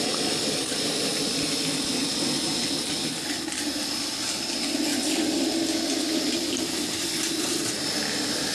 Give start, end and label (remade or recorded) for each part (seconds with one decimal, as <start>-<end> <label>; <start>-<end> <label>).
0.0-2.0 remade; 2.0-2.9 recorded; 2.9-8.5 remade